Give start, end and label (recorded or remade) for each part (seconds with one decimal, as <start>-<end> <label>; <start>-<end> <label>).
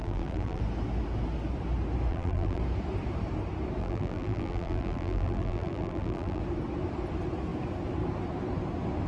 0.0-0.6 remade; 0.6-2.1 recorded; 2.1-2.6 remade; 2.6-3.8 recorded; 3.8-6.4 remade; 6.4-9.1 recorded